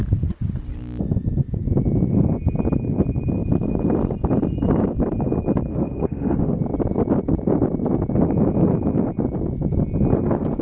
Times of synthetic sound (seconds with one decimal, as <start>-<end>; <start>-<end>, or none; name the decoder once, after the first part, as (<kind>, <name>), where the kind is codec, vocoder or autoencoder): 5.7-6.6 (autoencoder, DAC-VAE)

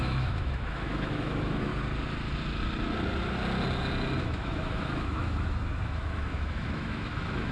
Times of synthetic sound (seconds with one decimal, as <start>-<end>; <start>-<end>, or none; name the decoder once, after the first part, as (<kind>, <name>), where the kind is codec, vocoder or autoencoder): 0.0-1.7 (autoencoder, DAC-VAE); 4.2-7.5

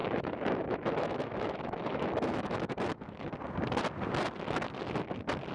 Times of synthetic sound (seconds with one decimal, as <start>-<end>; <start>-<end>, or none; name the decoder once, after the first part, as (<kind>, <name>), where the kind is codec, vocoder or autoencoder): 0.0-3.3 (autoencoder, DAC-VAE)

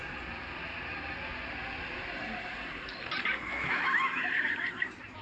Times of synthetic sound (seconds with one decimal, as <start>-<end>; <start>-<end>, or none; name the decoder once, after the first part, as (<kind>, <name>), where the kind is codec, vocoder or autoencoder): 3.5-4.5 (autoencoder, DAC-VAE)

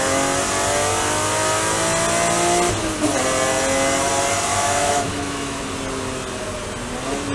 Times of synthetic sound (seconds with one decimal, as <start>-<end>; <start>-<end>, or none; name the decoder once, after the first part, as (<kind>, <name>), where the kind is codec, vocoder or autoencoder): 4.5-5.6 (autoencoder, DAC-VAE)